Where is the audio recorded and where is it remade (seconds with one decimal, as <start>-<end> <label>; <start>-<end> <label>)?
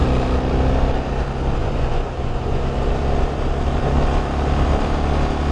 0.0-1.6 recorded; 1.6-2.6 remade; 2.6-5.5 recorded